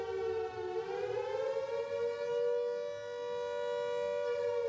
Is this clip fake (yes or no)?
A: no